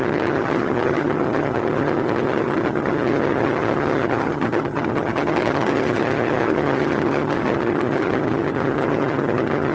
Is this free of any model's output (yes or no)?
no